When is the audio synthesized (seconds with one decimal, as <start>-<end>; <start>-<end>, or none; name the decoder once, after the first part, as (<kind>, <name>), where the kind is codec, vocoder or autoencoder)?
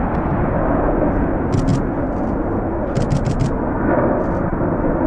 none